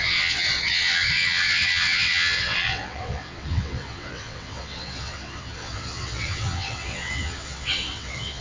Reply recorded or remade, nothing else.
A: remade